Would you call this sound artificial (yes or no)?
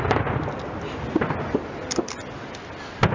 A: no